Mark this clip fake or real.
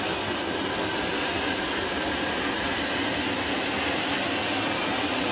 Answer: real